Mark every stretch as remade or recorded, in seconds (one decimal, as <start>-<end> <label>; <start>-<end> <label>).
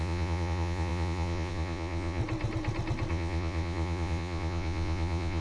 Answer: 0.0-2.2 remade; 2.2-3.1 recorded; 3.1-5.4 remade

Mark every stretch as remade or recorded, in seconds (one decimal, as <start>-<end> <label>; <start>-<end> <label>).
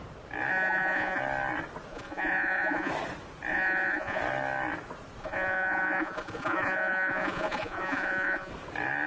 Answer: 0.0-0.5 recorded; 0.5-1.2 remade; 1.2-1.9 recorded; 1.9-2.9 remade; 2.9-3.5 recorded; 3.5-4.2 remade; 4.2-5.2 recorded; 5.2-8.5 remade; 8.5-9.1 recorded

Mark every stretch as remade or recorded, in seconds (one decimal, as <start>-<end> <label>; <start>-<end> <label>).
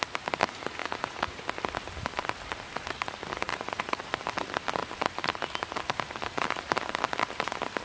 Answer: 0.0-0.8 recorded; 0.8-1.4 remade; 1.4-3.5 recorded; 3.5-4.1 remade; 4.1-7.8 recorded